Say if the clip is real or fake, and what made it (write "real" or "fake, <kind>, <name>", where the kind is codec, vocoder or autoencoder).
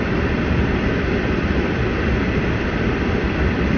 fake, vocoder, BigVGAN v2